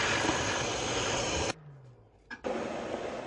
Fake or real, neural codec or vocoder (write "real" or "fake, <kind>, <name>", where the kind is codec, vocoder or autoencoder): real